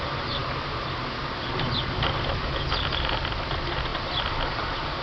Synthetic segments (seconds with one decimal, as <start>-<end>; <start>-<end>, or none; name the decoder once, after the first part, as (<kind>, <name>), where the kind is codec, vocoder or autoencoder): none